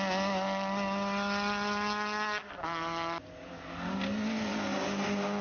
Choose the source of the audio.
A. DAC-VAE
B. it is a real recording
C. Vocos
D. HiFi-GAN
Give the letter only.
B